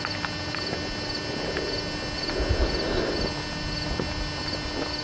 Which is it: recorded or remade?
recorded